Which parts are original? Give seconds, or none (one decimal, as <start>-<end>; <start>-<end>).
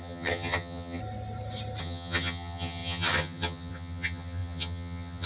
1.0-1.8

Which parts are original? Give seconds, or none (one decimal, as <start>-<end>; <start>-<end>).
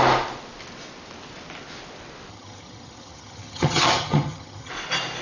0.0-2.3; 4.7-5.2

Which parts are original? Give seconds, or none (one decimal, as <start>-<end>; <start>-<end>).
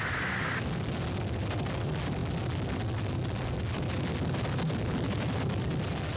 0.0-6.2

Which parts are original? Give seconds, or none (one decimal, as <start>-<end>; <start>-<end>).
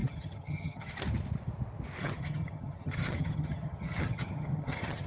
1.0-2.0